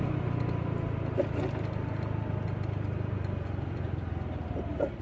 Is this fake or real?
real